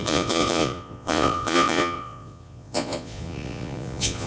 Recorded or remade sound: remade